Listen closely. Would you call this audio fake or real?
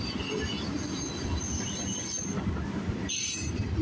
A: real